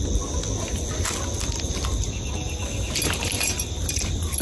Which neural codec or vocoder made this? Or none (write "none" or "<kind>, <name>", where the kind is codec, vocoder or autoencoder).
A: none